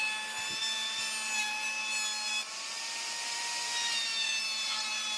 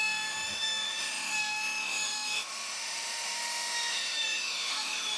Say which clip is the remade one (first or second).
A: second